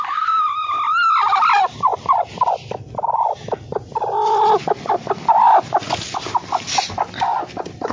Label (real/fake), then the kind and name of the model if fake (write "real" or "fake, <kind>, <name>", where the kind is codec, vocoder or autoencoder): real